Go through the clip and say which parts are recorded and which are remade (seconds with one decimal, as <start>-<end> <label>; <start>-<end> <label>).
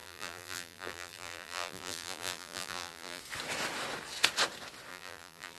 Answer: 0.0-3.2 remade; 3.2-4.9 recorded; 4.9-5.6 remade